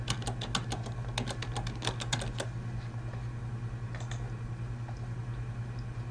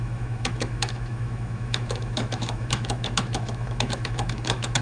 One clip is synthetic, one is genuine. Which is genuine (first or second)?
first